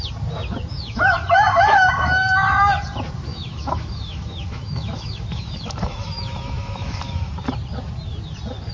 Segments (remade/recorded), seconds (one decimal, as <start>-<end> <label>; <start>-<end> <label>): 0.0-0.7 recorded; 0.7-2.8 remade; 2.8-3.3 recorded; 3.3-7.3 remade; 7.3-8.7 recorded